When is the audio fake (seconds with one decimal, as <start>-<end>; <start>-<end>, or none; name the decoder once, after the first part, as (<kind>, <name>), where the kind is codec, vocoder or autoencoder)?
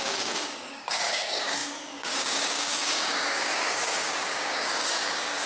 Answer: 0.0-5.5 (codec, DAC)